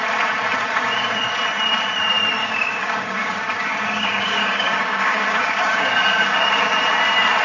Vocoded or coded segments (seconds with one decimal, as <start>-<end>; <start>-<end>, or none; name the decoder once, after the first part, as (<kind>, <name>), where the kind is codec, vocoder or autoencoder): 2.4-6.8 (codec, DAC)